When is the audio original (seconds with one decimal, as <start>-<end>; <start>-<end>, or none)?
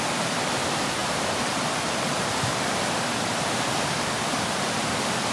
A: 0.0-5.3